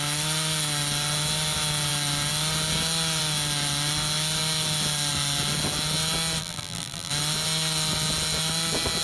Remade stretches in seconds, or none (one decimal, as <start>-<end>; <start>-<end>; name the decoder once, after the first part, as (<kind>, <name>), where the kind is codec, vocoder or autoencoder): 6.4-7.1 (vocoder, BigVGAN v2)

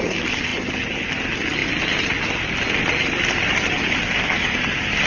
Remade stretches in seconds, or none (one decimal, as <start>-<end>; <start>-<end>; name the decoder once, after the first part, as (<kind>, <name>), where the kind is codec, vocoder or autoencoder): none

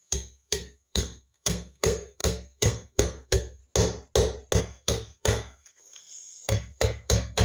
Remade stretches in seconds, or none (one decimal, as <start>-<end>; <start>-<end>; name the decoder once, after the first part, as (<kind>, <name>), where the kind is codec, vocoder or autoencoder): 0.0-3.6 (codec, SNAC); 4.6-7.4

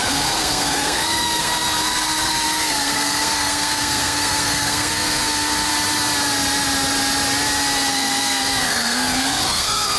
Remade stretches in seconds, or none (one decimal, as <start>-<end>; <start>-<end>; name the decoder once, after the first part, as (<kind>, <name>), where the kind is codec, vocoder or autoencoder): 0.0-5.7 (codec, SNAC); 7.9-10.0

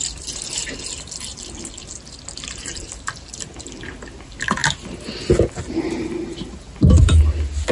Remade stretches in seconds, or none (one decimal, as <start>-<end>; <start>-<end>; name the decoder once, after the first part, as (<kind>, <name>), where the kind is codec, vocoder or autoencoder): none

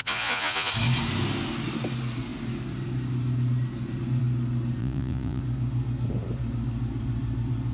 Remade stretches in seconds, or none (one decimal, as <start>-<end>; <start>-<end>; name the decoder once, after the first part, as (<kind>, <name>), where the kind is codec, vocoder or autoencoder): 0.0-0.7 (vocoder, Vocos); 4.8-5.4

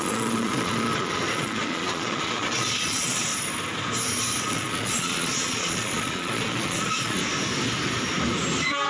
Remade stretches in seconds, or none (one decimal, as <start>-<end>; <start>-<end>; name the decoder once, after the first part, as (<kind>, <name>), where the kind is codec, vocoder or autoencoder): 0.0-3.3 (vocoder, Vocos); 4.4-7.2